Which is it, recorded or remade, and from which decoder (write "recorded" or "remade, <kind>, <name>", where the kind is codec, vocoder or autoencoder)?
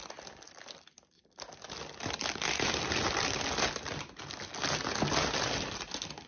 recorded